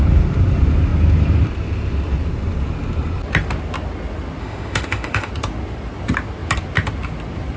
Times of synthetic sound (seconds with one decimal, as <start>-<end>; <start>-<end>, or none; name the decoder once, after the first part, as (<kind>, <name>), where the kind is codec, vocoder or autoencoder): 4.4-5.3 (autoencoder, DAC-VAE)